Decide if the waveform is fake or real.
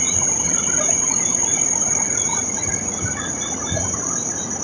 fake